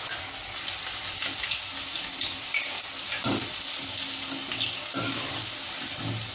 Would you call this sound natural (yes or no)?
yes